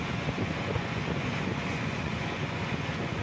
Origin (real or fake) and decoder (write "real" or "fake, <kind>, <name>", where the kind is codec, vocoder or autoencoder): fake, vocoder, Vocos